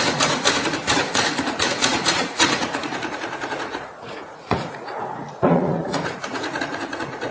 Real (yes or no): no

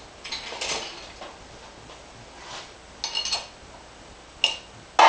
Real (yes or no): yes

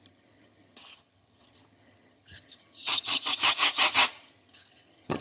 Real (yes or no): no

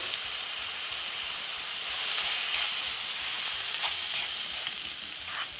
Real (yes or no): yes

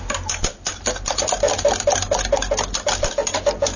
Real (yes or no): yes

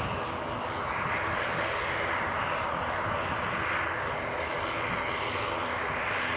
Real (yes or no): yes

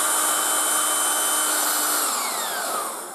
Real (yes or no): yes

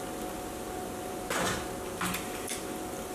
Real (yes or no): yes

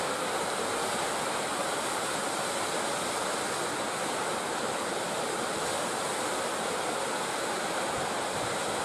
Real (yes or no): yes